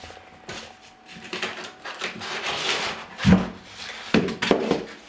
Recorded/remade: recorded